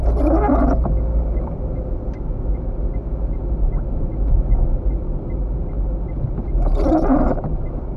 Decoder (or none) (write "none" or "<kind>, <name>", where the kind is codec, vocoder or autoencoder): none